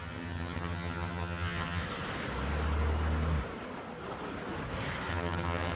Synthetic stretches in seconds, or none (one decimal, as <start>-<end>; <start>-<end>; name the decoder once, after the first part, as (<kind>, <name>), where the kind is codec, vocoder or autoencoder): 0.0-1.8 (vocoder, HiFi-GAN); 5.1-5.8